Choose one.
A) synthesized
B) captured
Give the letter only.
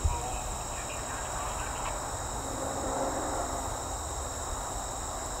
B